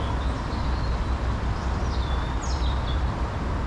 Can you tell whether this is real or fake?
real